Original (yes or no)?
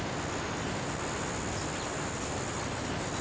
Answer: yes